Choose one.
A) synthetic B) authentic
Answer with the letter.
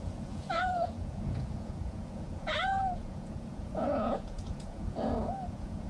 A